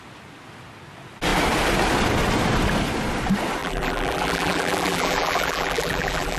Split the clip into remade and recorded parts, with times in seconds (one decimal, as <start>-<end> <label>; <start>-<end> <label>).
0.0-3.6 recorded; 3.6-6.4 remade